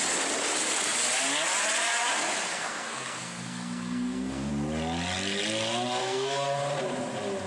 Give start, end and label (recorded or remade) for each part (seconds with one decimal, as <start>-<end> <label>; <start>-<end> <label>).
0.0-2.5 recorded; 2.5-4.5 remade; 4.5-6.0 recorded; 6.0-6.6 remade; 6.6-7.5 recorded